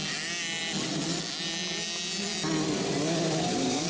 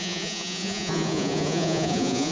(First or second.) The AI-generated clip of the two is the second